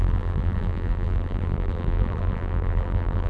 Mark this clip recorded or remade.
remade